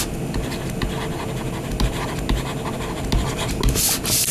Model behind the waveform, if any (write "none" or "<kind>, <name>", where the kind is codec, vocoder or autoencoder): none